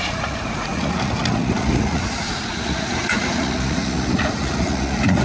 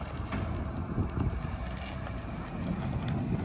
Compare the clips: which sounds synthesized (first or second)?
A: first